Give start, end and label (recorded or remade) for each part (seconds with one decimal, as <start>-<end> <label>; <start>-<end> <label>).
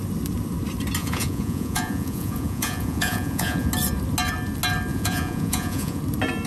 0.0-1.0 recorded; 1.0-3.7 remade; 3.7-4.9 recorded; 4.9-6.0 remade; 6.0-6.5 recorded